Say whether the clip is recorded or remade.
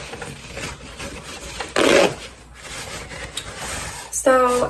recorded